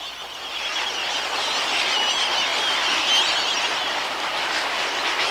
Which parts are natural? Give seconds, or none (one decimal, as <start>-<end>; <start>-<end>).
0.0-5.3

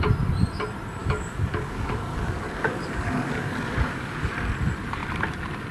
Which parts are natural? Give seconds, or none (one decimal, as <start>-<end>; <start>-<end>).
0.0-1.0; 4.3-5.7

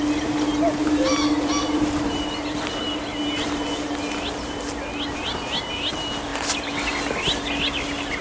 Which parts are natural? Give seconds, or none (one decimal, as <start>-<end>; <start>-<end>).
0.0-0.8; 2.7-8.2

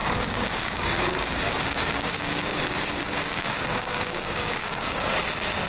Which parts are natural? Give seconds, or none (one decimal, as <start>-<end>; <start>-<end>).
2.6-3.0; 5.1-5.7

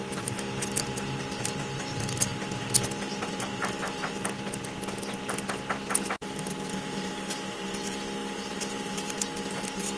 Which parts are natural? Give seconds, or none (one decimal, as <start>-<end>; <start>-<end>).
0.0-10.0

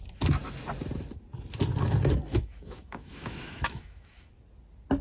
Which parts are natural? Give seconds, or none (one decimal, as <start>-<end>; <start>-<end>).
0.0-2.3; 4.3-5.0

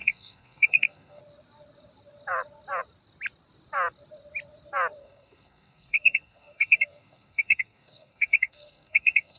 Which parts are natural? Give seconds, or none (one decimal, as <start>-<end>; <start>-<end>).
1.2-5.0